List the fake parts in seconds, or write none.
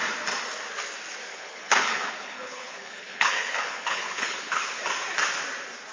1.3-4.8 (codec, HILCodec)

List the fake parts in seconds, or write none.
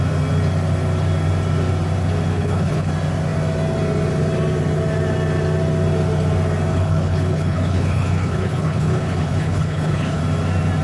2.3-2.9 (codec, HILCodec); 6.7-10.2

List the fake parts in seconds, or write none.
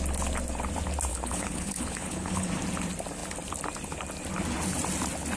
1.1-2.5 (codec, HILCodec)